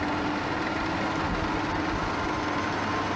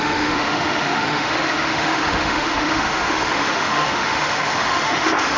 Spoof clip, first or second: second